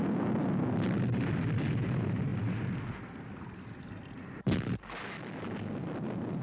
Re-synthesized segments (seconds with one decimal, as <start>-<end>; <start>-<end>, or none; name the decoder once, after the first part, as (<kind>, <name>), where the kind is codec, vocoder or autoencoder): none